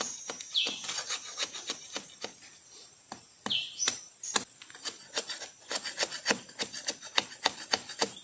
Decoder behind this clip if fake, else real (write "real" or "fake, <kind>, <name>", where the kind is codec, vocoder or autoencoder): real